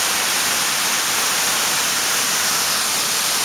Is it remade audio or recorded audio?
recorded